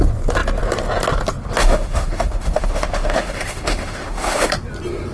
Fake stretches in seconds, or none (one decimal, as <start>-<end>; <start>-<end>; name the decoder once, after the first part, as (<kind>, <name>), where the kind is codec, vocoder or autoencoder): 1.6-4.5 (autoencoder, DAC-VAE)